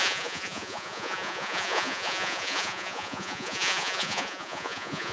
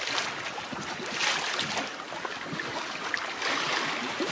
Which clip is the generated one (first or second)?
first